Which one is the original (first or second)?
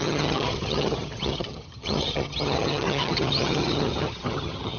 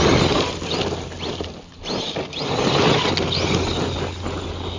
second